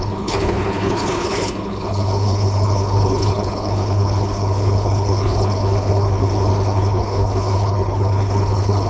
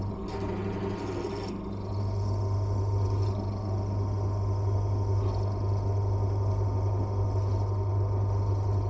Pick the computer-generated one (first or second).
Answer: first